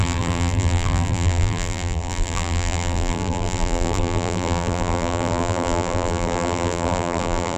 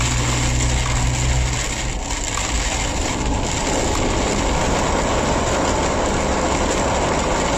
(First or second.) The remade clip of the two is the first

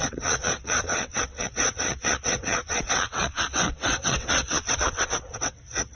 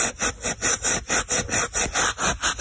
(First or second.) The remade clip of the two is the first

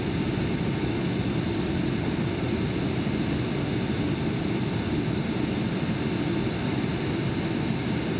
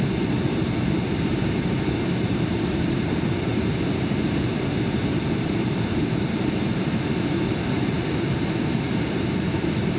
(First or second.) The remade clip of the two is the second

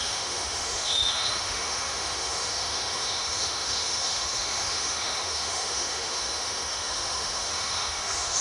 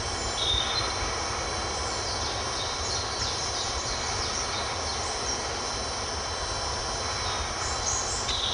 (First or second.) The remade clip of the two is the first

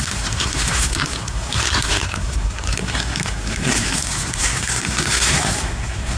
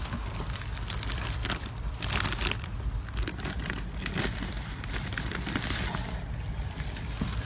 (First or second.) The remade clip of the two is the first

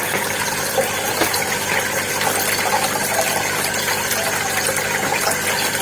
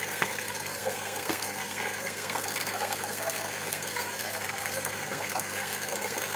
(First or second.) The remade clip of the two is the second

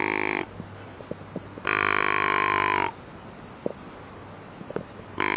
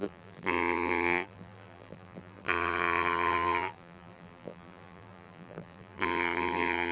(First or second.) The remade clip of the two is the second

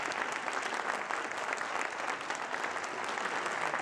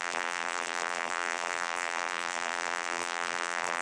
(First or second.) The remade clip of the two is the second